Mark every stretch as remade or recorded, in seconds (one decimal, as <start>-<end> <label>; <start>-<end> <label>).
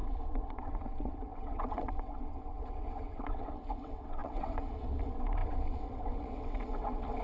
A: 0.0-7.2 remade